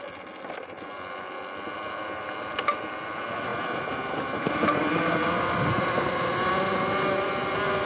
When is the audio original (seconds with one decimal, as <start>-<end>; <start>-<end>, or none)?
0.0-7.9